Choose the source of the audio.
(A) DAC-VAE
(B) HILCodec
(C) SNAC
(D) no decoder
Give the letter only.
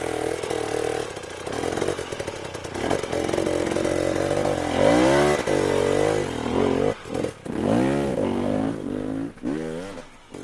D